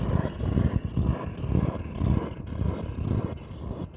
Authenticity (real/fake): real